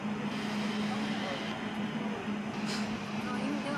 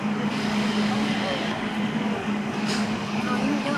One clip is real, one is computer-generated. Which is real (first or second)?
first